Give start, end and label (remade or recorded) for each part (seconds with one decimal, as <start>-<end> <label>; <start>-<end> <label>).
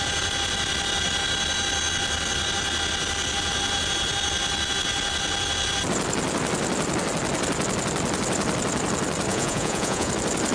0.0-9.3 recorded; 9.3-10.1 remade; 10.1-10.5 recorded